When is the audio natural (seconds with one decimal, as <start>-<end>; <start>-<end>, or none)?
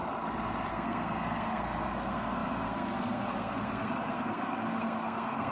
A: 0.0-0.7